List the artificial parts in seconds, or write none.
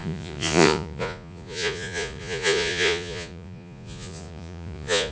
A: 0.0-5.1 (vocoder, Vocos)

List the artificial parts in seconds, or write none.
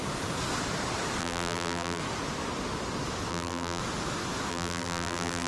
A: 1.2-2.0 (vocoder, BigVGAN v2); 3.3-3.8; 4.5-5.5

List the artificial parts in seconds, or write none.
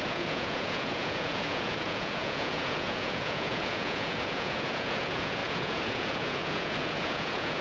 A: 0.0-7.6 (vocoder, Vocos)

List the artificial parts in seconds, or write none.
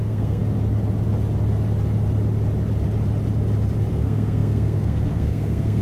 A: 0.0-0.4 (codec, SNAC); 3.9-5.8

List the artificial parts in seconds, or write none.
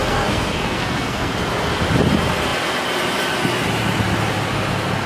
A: 0.0-1.3 (codec, SNAC)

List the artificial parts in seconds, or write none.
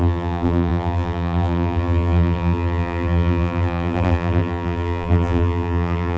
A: 0.0-6.2 (vocoder, BigVGAN v2)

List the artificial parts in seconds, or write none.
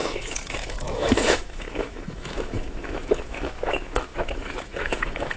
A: 0.0-5.4 (autoencoder, DAC-VAE)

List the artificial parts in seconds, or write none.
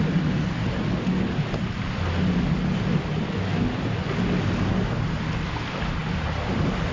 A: none